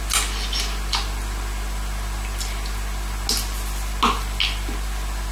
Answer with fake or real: real